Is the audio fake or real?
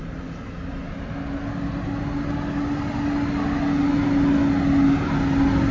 real